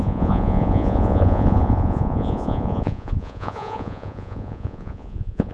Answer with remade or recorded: remade